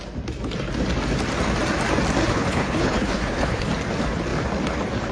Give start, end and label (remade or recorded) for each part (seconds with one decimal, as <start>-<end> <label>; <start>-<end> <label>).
0.0-2.2 recorded; 2.2-3.7 remade; 3.7-5.1 recorded